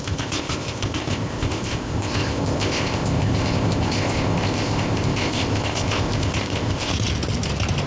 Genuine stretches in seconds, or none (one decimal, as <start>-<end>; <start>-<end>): 6.9-7.9